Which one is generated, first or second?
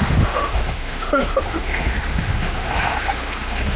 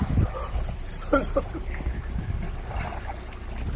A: first